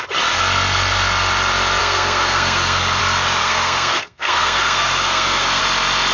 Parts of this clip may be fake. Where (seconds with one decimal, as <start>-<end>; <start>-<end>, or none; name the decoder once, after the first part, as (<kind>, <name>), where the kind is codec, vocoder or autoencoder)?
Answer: 1.8-3.0 (codec, SNAC); 3.4-5.6